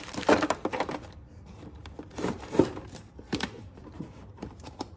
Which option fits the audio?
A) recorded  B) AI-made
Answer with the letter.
B